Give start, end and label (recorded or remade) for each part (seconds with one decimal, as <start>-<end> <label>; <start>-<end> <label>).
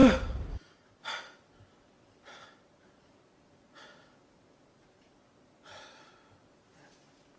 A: 0.0-7.4 recorded